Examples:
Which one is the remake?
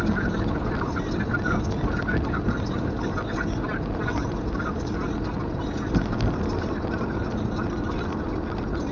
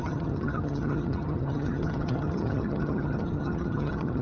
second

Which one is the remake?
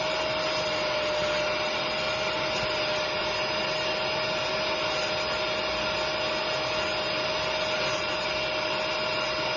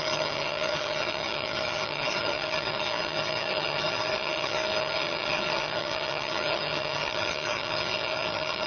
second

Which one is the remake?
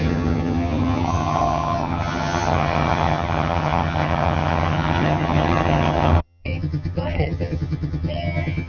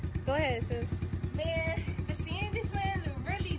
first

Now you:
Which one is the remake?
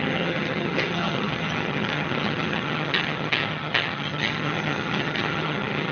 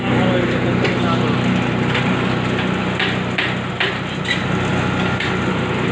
first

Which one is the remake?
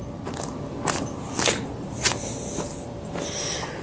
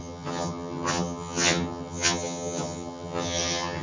second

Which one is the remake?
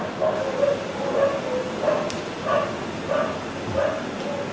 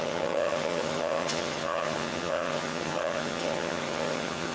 second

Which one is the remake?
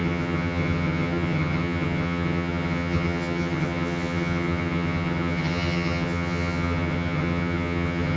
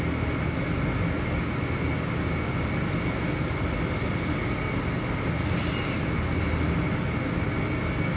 first